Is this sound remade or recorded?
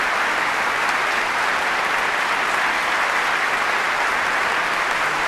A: recorded